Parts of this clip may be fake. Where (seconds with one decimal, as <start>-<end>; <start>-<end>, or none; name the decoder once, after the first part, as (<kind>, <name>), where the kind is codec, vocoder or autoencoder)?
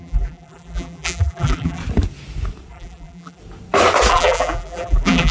0.0-1.8 (vocoder, BigVGAN v2); 2.7-3.4; 4.1-5.3